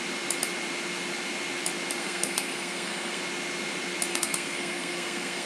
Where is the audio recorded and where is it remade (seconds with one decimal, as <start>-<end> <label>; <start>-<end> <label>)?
0.0-2.0 recorded; 2.0-3.2 remade; 3.2-4.1 recorded; 4.1-5.5 remade